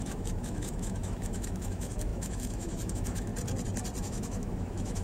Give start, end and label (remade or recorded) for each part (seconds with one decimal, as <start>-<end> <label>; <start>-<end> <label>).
0.0-3.3 remade; 3.3-4.0 recorded; 4.0-5.0 remade

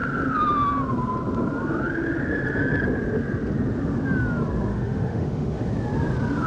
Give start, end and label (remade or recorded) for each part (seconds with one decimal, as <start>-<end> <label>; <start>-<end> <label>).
0.0-4.7 recorded; 4.7-5.7 remade; 5.7-6.5 recorded

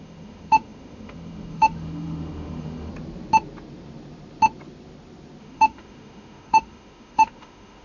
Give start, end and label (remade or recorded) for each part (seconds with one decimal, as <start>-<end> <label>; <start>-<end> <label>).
0.0-2.9 remade; 2.9-5.4 recorded; 5.4-7.8 remade

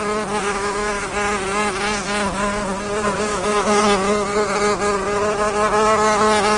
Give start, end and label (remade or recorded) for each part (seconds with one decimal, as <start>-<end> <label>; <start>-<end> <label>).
0.0-0.4 recorded; 0.4-1.1 remade; 1.1-3.3 recorded; 3.3-3.8 remade; 3.8-6.6 recorded

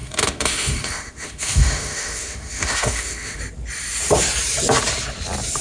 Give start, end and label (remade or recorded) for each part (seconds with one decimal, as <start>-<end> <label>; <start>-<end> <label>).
0.0-3.4 remade; 3.4-5.6 recorded

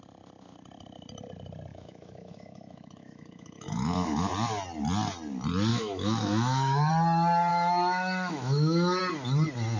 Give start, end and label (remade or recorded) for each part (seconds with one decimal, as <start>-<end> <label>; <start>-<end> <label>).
0.0-1.7 recorded; 1.7-4.3 remade; 4.3-5.7 recorded; 5.7-6.9 remade; 6.9-7.5 recorded; 7.5-9.0 remade; 9.0-9.8 recorded